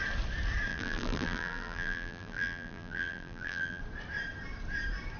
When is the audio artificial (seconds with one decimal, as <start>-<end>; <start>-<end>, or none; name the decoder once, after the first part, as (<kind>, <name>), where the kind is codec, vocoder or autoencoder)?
0.7-3.8 (vocoder, BigVGAN v2)

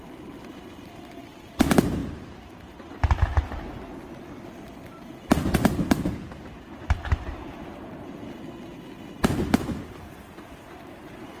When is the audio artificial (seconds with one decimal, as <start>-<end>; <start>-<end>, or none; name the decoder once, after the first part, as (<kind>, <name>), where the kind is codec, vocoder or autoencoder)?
none

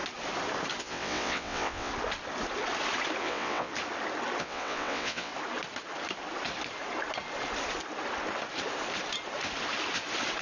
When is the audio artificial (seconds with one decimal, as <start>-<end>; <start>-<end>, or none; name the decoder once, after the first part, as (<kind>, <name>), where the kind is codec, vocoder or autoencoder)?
0.8-1.9 (vocoder, WaveNeXt); 3.2-3.7; 4.4-5.3

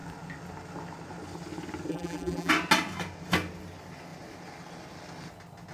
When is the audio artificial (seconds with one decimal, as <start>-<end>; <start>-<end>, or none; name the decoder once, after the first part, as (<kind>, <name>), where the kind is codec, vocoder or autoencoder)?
1.9-2.5 (vocoder, BigVGAN v2)

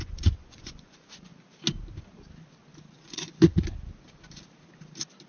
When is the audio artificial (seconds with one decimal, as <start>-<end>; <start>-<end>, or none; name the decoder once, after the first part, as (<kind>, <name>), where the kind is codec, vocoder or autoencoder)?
0.0-1.3 (vocoder, Vocos); 3.0-3.4

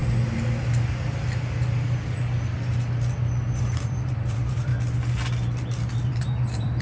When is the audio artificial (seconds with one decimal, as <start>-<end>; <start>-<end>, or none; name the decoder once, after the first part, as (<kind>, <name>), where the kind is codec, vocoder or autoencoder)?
3.6-4.7 (vocoder, BigVGAN v2); 6.1-6.8

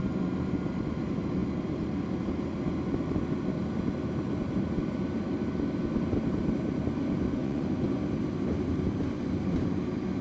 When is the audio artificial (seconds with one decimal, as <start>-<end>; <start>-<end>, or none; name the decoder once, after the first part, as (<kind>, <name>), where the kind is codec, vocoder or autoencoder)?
7.4-8.0 (vocoder, Vocos)

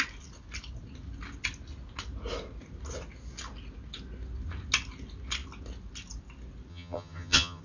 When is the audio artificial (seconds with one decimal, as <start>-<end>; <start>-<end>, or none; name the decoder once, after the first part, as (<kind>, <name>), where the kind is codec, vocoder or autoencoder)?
6.7-7.6 (vocoder, HiFi-GAN)